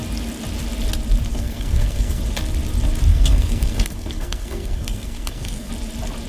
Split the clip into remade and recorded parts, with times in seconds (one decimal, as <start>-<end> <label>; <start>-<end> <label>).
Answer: 0.0-1.3 recorded; 1.3-2.2 remade; 2.2-3.1 recorded; 3.1-5.7 remade; 5.7-6.3 recorded